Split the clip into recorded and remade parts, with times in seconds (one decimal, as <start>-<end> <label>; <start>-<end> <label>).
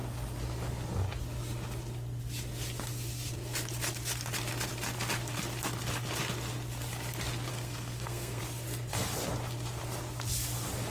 0.0-7.5 recorded; 7.5-8.4 remade; 8.4-10.9 recorded